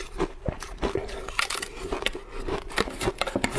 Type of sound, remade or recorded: recorded